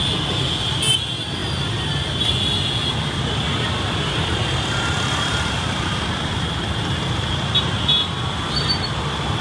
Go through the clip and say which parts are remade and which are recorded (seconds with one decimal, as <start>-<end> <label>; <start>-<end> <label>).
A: 0.0-2.9 recorded; 2.9-6.9 remade; 6.9-9.4 recorded